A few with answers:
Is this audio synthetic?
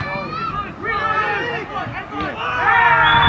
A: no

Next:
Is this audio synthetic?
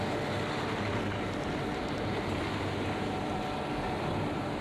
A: no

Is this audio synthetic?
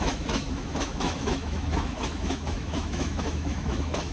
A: yes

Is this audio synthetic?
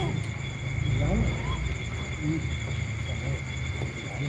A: no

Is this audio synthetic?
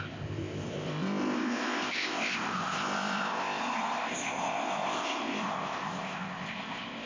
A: yes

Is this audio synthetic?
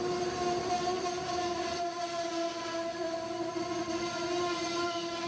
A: no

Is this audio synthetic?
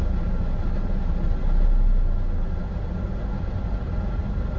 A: no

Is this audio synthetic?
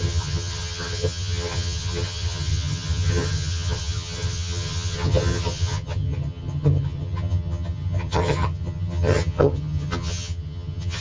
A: yes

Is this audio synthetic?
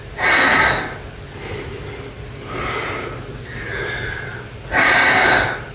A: no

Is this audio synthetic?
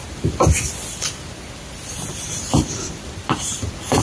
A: yes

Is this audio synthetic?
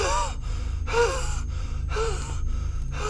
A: yes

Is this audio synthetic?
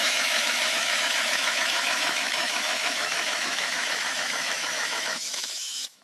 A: yes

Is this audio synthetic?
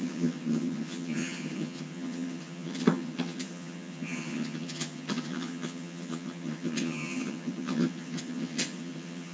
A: yes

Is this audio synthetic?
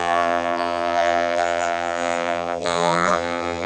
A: yes